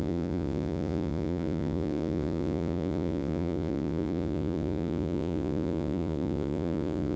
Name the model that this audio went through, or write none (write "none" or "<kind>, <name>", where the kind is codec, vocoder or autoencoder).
vocoder, Vocos